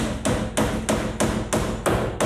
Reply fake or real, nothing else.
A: real